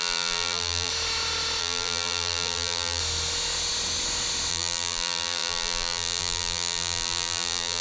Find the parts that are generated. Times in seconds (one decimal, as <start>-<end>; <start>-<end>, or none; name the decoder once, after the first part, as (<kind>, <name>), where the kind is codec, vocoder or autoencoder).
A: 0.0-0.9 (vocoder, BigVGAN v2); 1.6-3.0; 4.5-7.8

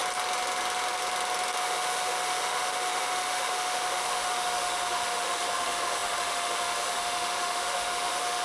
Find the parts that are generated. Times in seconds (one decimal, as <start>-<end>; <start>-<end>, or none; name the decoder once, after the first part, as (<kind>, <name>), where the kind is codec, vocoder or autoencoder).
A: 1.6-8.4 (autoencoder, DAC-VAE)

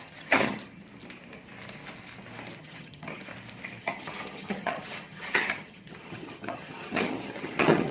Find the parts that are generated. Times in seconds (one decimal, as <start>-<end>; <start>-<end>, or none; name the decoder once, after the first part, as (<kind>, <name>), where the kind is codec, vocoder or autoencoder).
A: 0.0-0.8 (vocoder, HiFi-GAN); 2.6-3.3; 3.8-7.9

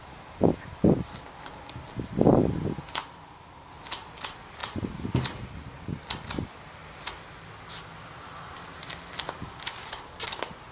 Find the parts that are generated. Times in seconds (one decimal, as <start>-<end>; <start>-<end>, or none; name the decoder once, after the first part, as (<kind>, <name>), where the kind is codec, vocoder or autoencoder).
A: 3.0-3.7 (vocoder, BigVGAN v2); 4.6-5.1

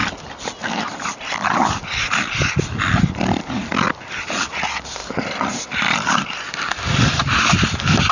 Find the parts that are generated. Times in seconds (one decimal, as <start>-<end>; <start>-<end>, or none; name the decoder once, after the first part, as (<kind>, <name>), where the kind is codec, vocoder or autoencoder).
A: none

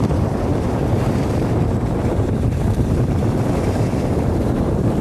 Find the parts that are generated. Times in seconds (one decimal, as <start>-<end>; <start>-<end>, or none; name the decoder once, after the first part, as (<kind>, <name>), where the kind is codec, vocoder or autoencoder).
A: 0.0-5.0 (vocoder, BigVGAN v2)